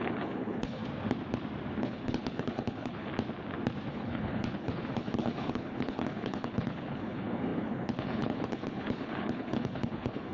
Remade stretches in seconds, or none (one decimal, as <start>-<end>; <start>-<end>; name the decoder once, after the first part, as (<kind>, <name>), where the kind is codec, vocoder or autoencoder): 0.0-0.8 (codec, HILCodec); 1.8-3.1; 3.9-10.3